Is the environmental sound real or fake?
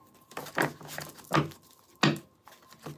real